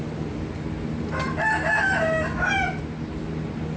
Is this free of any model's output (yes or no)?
yes